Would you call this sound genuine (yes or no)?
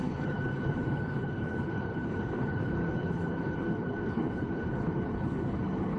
no